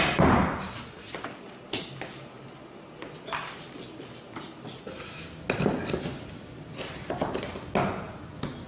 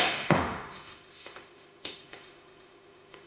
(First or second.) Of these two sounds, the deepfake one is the second